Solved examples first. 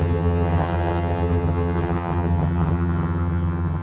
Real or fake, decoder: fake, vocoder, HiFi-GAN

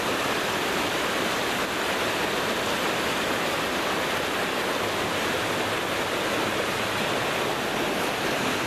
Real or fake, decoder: real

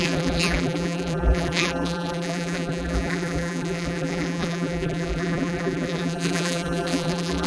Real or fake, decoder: fake, vocoder, BigVGAN v2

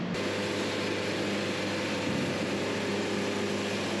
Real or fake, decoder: real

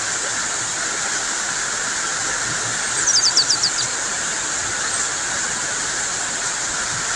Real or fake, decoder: fake, vocoder, BigVGAN v2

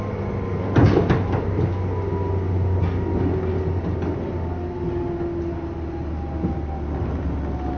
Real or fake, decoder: real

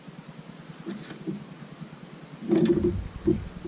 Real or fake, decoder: real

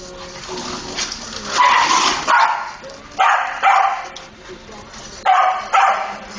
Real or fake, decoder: real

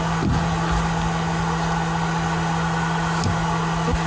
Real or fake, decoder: real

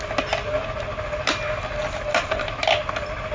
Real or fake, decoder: real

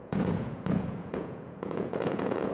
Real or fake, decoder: fake, vocoder, Vocos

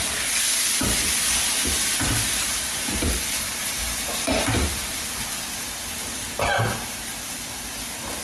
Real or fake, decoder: real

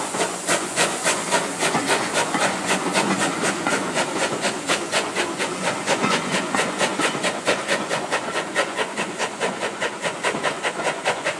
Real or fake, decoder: fake, vocoder, Vocos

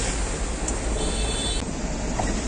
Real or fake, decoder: real